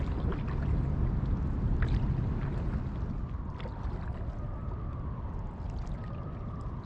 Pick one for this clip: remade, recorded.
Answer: recorded